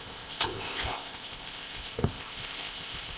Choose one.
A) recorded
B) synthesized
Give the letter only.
B